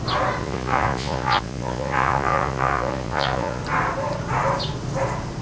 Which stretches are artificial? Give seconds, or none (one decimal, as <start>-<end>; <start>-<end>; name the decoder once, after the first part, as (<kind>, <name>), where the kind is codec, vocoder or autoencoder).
0.4-3.6 (vocoder, Vocos)